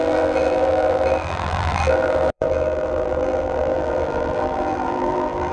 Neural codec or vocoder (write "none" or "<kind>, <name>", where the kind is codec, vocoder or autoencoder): vocoder, BigVGAN v2